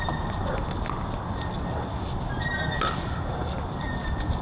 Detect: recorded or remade recorded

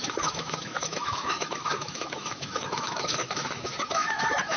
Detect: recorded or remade remade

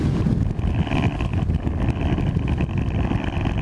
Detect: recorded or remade recorded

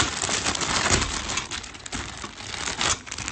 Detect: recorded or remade recorded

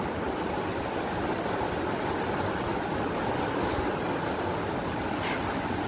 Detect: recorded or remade recorded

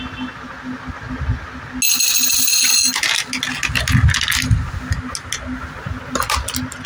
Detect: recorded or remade recorded